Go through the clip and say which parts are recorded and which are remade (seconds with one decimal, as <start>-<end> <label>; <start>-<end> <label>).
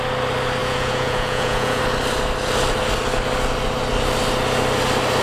0.0-0.6 recorded; 0.6-1.8 remade; 1.8-5.2 recorded